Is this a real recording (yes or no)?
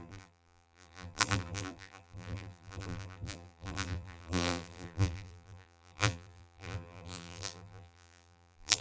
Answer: no